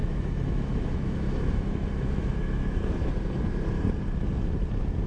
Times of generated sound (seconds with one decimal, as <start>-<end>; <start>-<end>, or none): 0.0-3.1